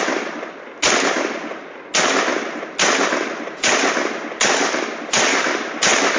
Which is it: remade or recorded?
recorded